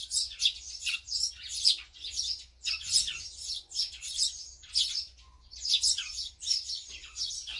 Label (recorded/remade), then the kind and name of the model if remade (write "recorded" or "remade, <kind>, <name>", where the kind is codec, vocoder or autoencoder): remade, vocoder, Vocos